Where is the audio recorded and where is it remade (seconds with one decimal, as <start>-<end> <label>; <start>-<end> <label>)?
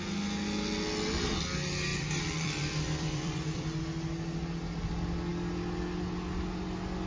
0.0-1.9 recorded; 1.9-3.8 remade; 3.8-7.1 recorded